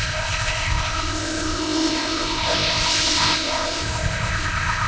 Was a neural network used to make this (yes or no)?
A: yes